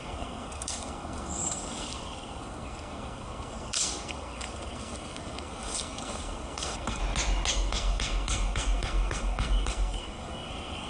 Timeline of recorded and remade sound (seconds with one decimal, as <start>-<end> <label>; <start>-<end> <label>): 0.0-7.0 remade; 7.0-7.5 recorded; 7.5-10.9 remade